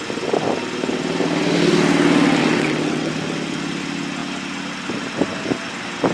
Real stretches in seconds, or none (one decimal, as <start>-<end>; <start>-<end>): 0.0-2.4; 3.1-6.1